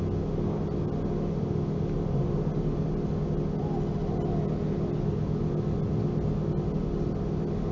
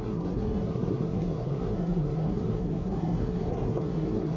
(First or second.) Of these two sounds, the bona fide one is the first